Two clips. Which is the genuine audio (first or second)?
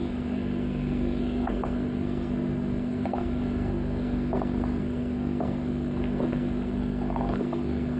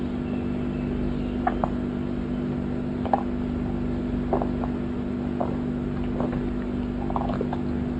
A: second